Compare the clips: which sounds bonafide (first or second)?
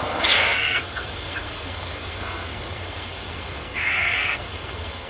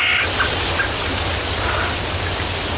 second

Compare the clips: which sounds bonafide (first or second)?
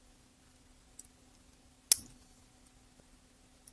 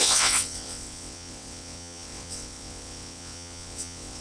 first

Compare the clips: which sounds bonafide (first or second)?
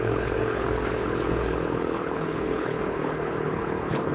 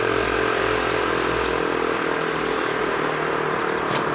second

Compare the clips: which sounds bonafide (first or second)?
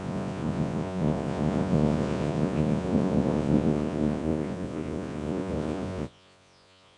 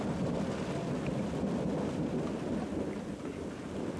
second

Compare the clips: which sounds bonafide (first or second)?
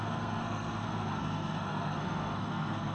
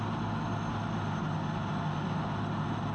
second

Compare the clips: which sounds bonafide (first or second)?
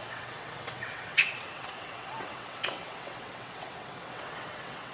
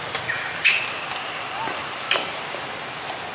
second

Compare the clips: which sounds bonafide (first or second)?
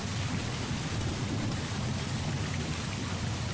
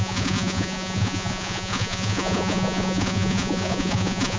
first